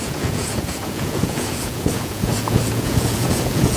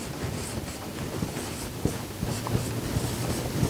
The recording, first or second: second